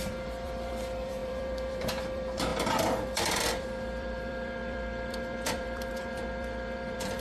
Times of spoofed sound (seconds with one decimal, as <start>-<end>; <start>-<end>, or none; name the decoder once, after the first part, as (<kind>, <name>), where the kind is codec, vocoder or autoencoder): 0.0-7.2 (vocoder, BigVGAN v2)